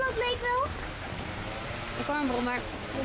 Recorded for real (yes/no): yes